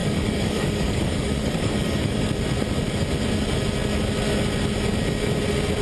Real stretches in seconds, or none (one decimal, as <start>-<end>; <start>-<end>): 2.3-5.8